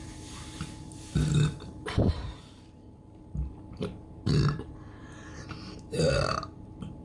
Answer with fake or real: fake